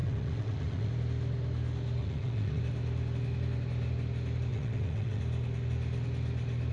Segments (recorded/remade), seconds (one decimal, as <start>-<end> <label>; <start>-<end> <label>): 0.0-0.9 remade; 0.9-2.0 recorded; 2.0-2.6 remade; 2.6-4.5 recorded; 4.5-5.2 remade; 5.2-6.7 recorded

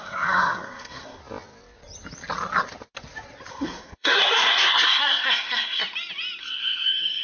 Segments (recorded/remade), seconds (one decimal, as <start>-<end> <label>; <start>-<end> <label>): 0.0-1.2 remade; 1.2-3.5 recorded; 3.5-5.8 remade; 5.8-6.4 recorded; 6.4-7.2 remade

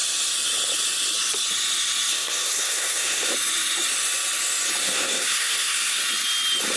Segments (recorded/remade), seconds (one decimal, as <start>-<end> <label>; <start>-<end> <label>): 0.0-2.1 recorded; 2.1-3.3 remade; 3.3-4.8 recorded; 4.8-6.0 remade; 6.0-6.8 recorded

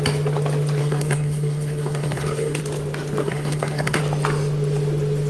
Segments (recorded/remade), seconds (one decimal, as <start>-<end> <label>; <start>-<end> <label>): 0.0-0.8 recorded; 0.8-2.6 remade; 2.6-3.2 recorded; 3.2-4.0 remade; 4.0-5.3 recorded